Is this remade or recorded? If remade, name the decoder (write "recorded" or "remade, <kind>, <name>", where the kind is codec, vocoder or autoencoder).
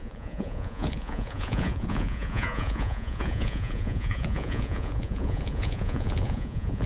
remade, vocoder, Vocos